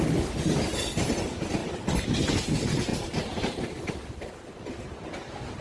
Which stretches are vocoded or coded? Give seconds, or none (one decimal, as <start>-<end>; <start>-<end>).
none